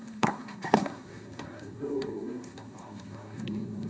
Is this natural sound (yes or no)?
no